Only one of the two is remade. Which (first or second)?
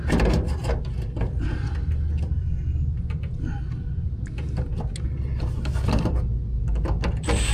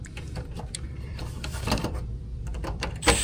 second